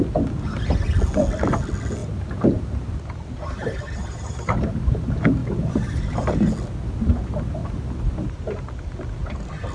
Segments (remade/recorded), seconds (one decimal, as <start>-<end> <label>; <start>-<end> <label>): 0.0-2.0 recorded; 2.0-4.9 remade; 4.9-5.4 recorded; 5.4-6.5 remade; 6.5-7.6 recorded; 7.6-8.6 remade; 8.6-9.7 recorded